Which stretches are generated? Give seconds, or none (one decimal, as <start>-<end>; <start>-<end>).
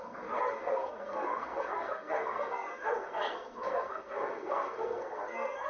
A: 0.0-5.7